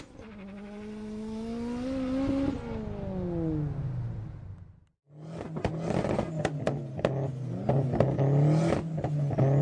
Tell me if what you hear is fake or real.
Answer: real